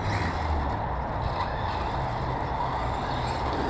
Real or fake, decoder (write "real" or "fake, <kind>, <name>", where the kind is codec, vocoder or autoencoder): real